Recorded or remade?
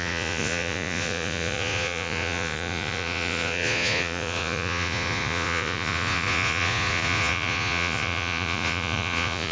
remade